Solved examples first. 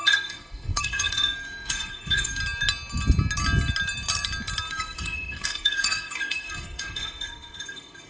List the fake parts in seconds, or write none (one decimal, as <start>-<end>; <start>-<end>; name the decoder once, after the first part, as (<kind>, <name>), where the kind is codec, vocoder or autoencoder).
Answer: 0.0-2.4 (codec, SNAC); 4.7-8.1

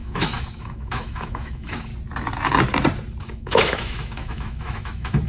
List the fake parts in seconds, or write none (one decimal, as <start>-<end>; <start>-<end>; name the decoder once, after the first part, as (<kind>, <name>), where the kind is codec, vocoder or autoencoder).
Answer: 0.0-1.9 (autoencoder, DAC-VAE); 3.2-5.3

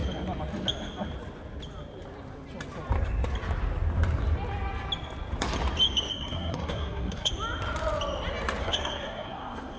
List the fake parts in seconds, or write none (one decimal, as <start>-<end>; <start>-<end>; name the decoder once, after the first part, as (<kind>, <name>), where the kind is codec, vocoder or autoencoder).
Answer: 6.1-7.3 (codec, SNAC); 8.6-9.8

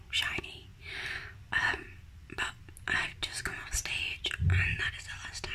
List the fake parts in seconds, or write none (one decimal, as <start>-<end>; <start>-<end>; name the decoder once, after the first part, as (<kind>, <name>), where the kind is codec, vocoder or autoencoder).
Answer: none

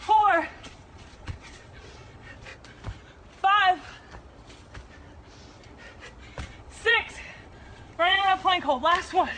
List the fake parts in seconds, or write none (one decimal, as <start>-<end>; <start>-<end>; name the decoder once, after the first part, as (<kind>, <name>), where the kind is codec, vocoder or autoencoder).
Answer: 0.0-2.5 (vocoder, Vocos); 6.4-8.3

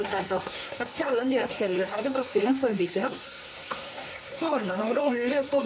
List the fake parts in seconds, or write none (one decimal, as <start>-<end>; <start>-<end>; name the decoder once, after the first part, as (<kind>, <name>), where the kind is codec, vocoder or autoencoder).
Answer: 0.0-5.7 (codec, SNAC)

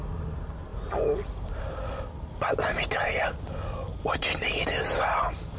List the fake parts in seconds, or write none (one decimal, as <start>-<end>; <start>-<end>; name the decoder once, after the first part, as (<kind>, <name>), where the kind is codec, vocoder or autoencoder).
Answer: none